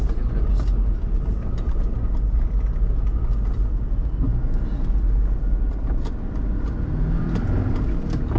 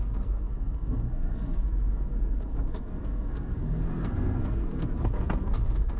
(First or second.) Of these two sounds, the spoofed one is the second